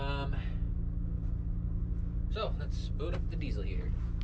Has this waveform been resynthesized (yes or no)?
no